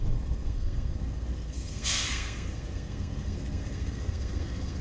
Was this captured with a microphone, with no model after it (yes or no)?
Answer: no